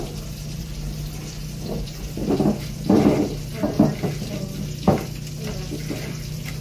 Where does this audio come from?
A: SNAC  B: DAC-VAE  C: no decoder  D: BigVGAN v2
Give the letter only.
D